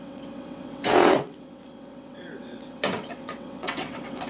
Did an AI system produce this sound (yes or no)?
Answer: yes